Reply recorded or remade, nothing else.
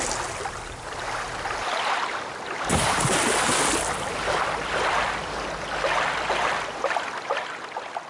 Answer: recorded